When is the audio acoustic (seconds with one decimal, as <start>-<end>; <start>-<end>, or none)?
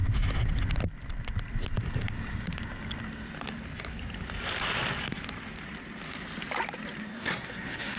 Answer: 0.0-7.0